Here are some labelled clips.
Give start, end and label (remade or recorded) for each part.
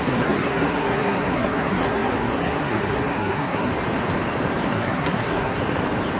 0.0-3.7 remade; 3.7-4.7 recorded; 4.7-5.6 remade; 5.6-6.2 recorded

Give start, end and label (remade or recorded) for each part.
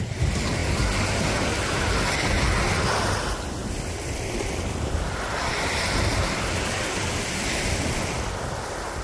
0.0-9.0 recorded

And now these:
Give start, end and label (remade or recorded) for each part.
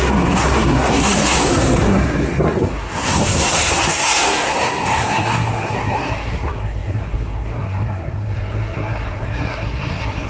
0.0-10.3 remade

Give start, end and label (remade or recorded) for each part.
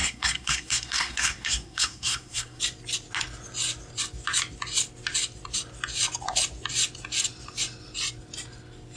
0.0-2.6 remade; 2.6-9.0 recorded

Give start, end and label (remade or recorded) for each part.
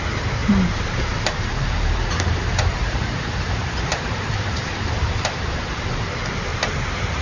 0.0-0.4 recorded; 0.4-4.7 remade; 4.7-6.5 recorded; 6.5-7.2 remade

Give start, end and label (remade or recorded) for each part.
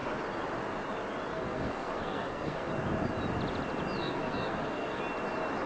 0.0-1.3 recorded; 1.3-2.7 remade; 2.7-4.0 recorded; 4.0-5.0 remade; 5.0-5.7 recorded